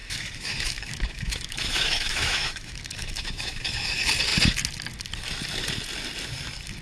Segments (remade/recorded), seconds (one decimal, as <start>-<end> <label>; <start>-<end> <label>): 0.0-3.9 remade; 3.9-6.8 recorded